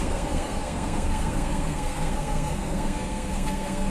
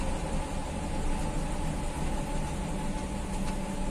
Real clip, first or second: second